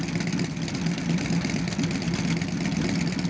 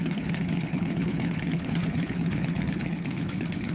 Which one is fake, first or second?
second